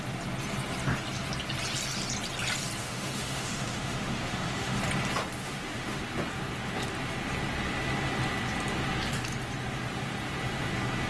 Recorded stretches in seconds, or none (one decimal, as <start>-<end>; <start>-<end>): 0.0-2.8; 4.8-5.4; 6.0-11.1